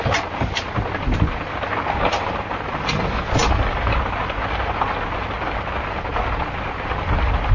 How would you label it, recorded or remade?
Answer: recorded